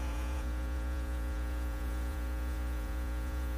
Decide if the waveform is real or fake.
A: fake